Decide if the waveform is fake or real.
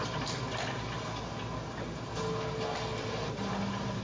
real